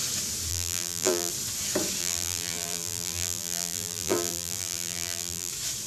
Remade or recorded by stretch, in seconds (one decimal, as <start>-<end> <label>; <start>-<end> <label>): 0.0-0.5 recorded; 0.5-1.3 remade; 1.3-2.0 recorded; 2.0-5.5 remade; 5.5-5.9 recorded